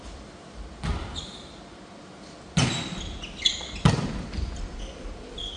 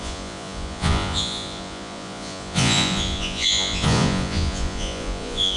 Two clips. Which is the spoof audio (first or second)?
second